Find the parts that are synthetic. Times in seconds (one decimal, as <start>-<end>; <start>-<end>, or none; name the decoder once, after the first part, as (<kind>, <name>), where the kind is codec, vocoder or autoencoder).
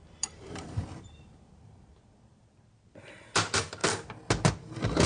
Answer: 0.0-3.8 (vocoder, BigVGAN v2); 4.5-5.1